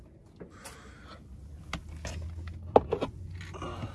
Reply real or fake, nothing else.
real